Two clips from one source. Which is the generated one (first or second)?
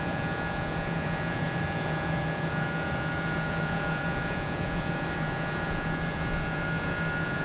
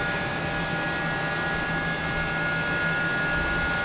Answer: first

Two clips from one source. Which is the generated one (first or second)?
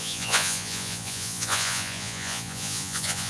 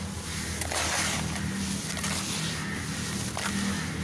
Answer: first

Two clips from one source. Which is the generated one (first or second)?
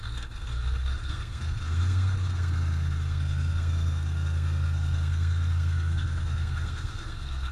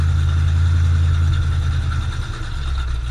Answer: first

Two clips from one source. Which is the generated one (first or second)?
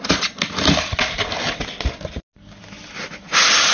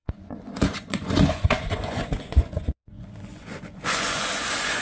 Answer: second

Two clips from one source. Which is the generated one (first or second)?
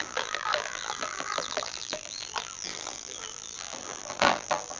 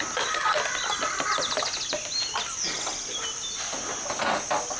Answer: first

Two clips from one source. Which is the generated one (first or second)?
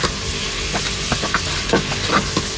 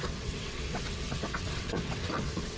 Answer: second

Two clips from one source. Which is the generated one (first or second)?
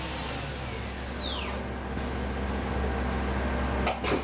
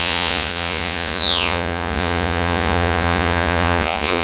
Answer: second